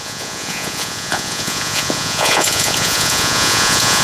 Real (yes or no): no